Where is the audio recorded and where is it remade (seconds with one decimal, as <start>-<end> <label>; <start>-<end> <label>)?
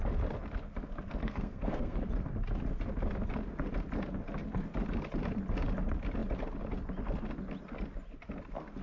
0.0-1.2 recorded; 1.2-2.0 remade; 2.0-8.8 recorded